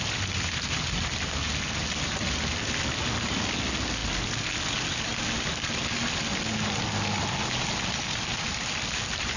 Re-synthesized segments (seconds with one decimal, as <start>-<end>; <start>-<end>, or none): none